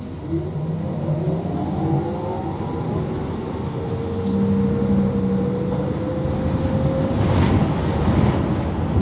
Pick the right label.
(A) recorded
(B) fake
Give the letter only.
A